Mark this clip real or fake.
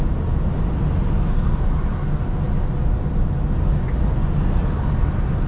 real